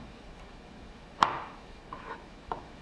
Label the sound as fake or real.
fake